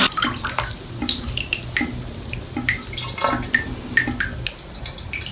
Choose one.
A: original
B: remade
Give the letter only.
A